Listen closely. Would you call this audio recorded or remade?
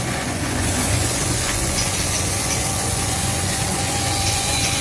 remade